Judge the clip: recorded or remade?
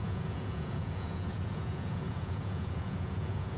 remade